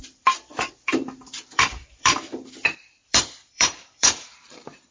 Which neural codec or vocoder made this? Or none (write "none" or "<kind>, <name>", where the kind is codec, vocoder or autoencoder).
vocoder, BigVGAN v2